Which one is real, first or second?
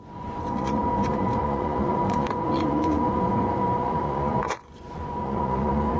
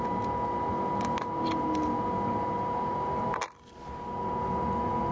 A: second